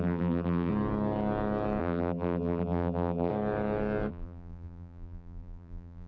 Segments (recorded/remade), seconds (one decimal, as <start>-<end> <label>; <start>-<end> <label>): 0.0-0.7 remade; 0.7-1.8 recorded; 1.8-3.3 remade; 3.3-4.1 recorded; 4.1-6.1 remade